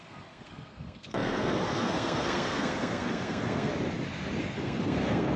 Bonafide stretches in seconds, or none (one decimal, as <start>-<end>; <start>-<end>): 3.7-4.4